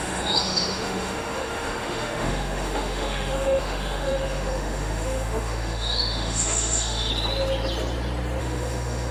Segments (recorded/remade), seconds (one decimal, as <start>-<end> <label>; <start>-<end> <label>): 0.0-7.1 remade; 7.1-8.4 recorded; 8.4-9.1 remade